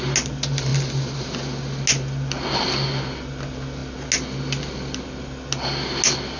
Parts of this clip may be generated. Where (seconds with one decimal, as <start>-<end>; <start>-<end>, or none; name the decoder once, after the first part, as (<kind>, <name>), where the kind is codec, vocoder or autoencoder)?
none